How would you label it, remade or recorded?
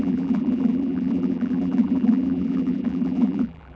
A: remade